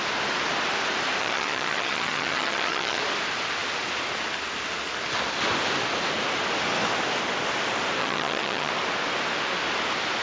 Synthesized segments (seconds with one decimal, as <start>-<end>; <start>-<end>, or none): 1.2-3.0; 8.0-8.7

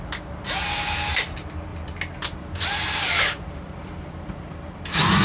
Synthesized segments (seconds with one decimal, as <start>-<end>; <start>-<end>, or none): 1.7-4.8

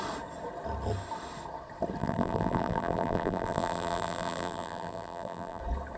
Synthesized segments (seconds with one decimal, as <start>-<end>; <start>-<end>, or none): 2.0-5.6

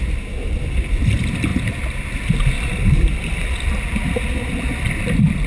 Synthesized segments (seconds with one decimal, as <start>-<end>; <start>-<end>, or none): none

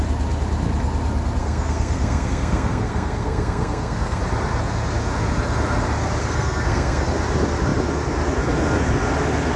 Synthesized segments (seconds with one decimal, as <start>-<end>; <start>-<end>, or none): 1.4-4.2; 6.2-7.1